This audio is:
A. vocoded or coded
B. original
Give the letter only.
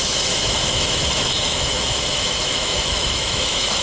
A